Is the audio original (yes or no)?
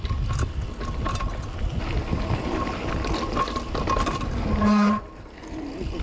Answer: yes